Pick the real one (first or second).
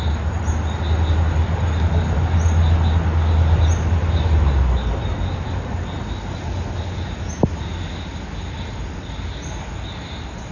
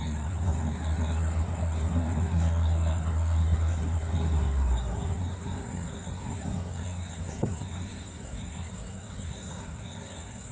first